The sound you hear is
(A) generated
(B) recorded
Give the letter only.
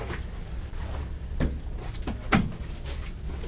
B